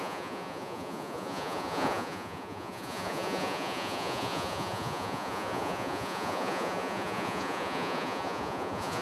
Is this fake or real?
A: fake